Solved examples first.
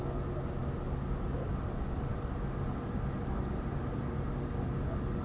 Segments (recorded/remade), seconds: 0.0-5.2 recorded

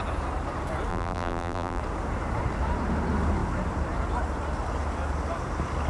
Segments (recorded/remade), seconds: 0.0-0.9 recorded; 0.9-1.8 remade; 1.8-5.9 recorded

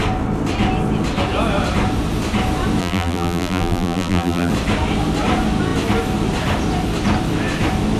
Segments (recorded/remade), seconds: 0.0-2.8 recorded; 2.8-4.5 remade; 4.5-8.0 recorded

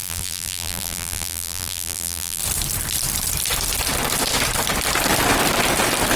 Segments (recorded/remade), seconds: 0.0-2.4 remade; 2.4-6.2 recorded